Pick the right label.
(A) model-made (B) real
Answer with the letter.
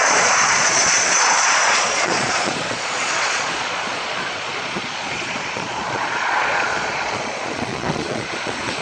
A